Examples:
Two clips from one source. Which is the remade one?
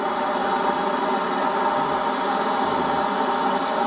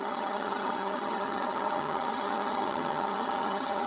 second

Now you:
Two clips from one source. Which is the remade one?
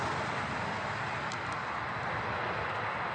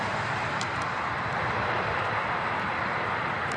second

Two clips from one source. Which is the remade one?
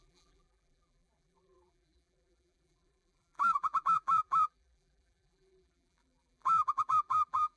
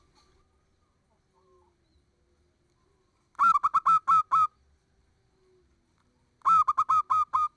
first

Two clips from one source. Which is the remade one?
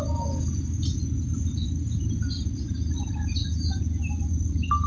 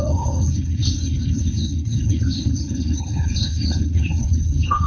second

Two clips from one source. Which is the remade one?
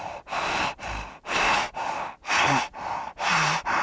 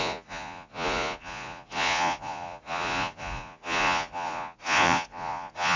second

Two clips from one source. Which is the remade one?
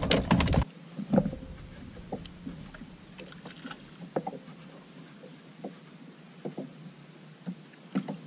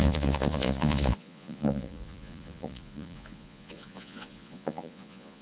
second